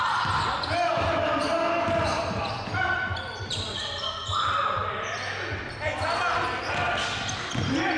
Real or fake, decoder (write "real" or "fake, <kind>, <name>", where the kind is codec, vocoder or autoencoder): real